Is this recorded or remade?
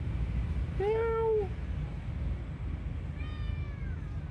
recorded